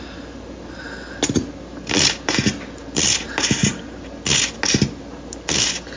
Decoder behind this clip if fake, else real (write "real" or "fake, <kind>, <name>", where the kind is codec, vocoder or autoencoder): real